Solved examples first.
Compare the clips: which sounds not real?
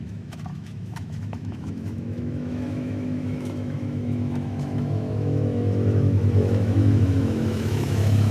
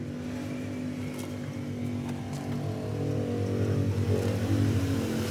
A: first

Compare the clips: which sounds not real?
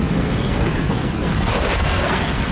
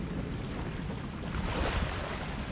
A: first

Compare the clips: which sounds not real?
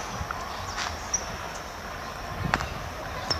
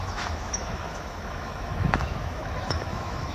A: second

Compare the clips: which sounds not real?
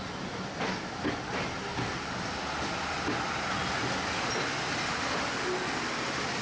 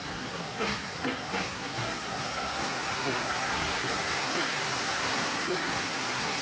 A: second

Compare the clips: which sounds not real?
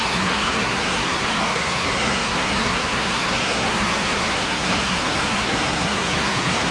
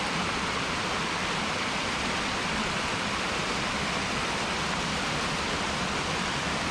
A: first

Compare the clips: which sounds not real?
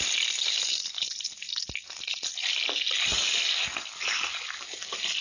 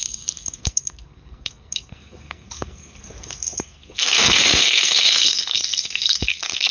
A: second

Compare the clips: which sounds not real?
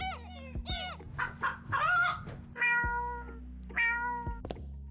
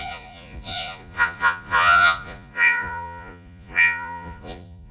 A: second